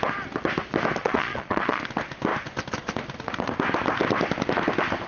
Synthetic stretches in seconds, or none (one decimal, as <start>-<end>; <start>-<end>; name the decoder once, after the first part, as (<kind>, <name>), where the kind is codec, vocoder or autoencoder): 1.0-1.8 (vocoder, Vocos)